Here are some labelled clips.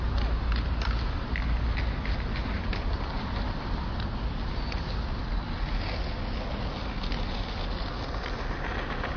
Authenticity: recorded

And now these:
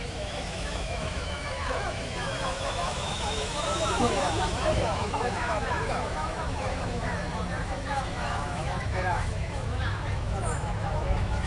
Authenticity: remade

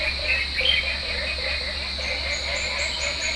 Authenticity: recorded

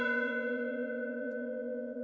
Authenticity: remade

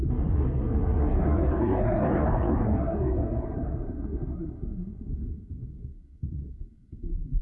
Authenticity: remade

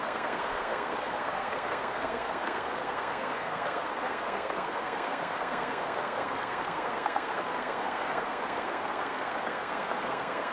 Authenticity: remade